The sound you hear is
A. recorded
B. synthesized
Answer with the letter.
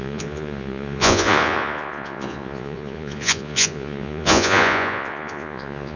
B